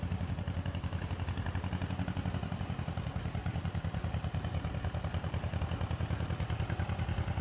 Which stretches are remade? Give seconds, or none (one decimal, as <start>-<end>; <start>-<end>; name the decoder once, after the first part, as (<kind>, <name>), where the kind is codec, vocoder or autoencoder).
3.4-5.6 (vocoder, BigVGAN v2)